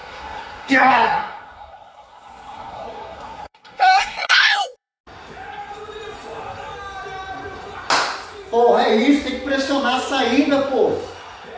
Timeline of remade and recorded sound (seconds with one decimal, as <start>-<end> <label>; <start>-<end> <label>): 0.0-5.0 remade; 5.0-11.6 recorded